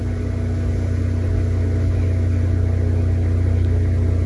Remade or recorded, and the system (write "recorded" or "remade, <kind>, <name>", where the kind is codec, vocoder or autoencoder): recorded